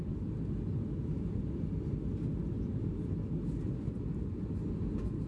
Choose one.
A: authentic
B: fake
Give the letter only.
A